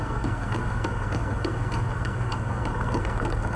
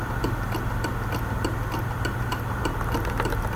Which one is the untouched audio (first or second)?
second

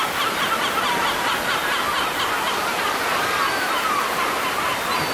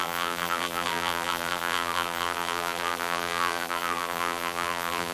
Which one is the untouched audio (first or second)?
first